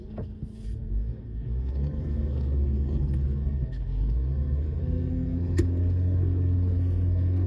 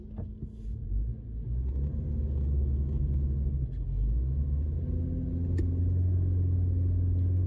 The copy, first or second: first